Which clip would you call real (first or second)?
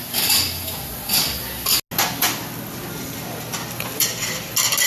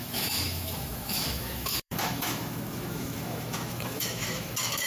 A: first